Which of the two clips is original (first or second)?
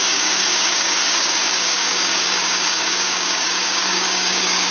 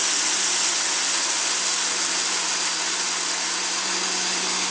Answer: second